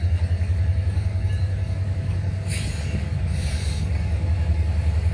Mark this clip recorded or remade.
remade